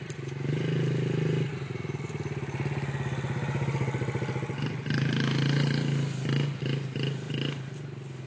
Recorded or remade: recorded